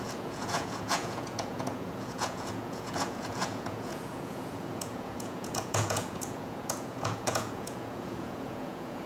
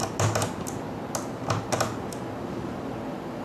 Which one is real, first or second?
second